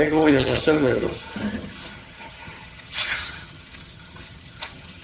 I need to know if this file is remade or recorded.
remade